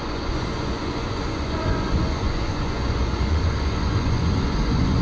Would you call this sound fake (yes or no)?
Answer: yes